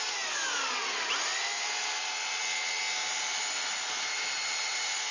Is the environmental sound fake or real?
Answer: real